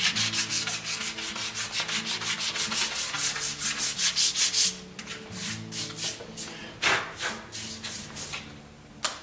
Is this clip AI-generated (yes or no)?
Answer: no